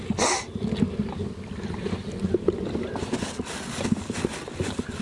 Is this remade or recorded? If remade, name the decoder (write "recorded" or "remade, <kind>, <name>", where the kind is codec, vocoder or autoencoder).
recorded